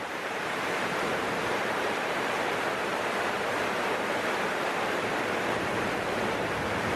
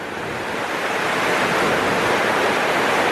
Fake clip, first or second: first